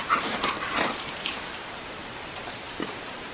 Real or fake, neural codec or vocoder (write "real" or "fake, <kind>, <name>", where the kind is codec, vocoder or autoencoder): fake, vocoder, BigVGAN v2